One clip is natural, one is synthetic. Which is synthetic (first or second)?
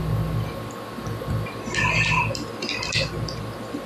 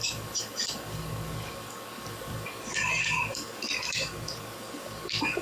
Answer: second